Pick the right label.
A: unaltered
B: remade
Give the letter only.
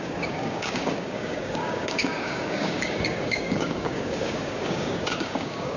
B